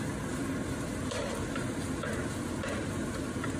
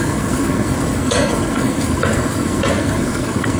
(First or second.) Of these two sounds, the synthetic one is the second